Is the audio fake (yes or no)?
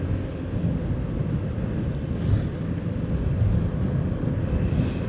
no